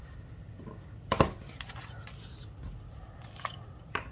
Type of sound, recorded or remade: recorded